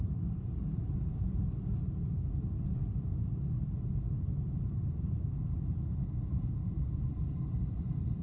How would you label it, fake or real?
fake